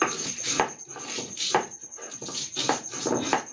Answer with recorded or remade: recorded